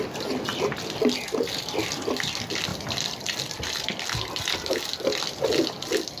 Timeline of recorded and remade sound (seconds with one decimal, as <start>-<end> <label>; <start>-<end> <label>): 0.0-6.2 recorded